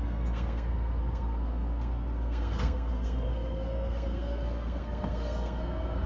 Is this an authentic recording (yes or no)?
no